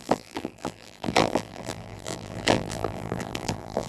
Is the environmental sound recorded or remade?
remade